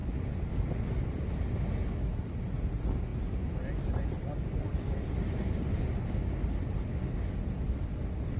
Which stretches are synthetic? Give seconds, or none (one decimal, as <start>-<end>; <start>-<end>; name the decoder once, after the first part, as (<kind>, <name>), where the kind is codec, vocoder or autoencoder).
0.0-0.7 (vocoder, BigVGAN v2); 3.1-5.8